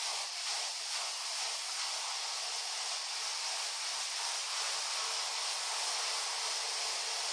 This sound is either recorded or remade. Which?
recorded